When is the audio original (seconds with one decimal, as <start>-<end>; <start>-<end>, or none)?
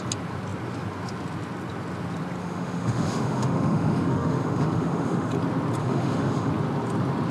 0.0-2.4; 5.3-5.8; 6.5-7.3